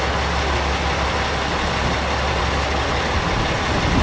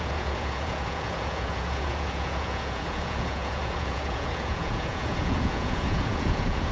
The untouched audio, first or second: first